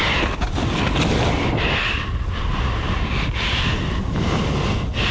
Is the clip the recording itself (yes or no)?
yes